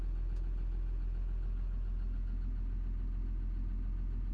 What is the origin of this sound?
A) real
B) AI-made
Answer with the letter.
A